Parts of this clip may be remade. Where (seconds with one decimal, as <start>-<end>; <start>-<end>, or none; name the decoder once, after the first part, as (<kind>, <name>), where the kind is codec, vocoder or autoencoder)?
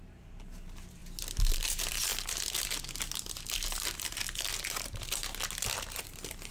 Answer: 0.0-1.0 (vocoder, BigVGAN v2); 1.5-2.1; 6.0-6.5